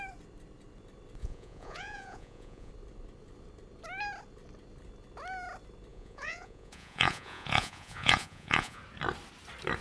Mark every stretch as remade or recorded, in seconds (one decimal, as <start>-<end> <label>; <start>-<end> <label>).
0.0-1.2 recorded; 1.2-2.7 remade; 2.7-5.9 recorded; 5.9-8.8 remade; 8.8-9.8 recorded